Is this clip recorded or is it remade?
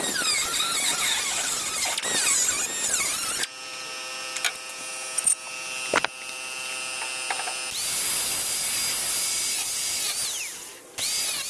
recorded